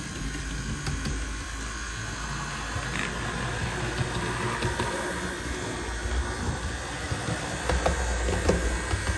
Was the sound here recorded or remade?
recorded